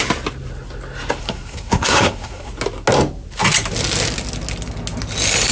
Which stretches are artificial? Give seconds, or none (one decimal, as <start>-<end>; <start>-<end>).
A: 1.2-2.5